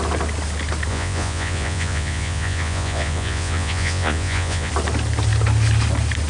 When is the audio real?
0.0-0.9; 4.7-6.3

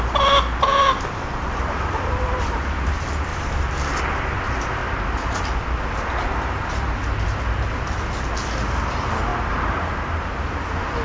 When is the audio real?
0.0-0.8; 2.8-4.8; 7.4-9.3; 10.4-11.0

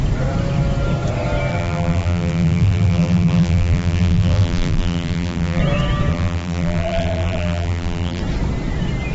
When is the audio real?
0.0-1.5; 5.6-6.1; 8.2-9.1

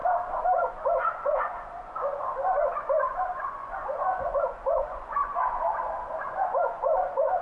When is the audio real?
0.0-0.7